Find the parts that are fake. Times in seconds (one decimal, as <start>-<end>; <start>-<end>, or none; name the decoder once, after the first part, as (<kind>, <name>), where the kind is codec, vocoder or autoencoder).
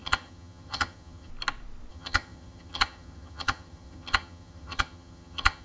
0.0-1.3 (vocoder, HiFi-GAN); 1.9-5.6